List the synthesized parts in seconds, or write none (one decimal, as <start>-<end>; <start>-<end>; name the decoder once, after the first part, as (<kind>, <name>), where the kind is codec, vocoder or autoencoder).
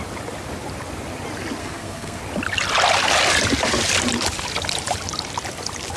1.6-2.2 (codec, SNAC)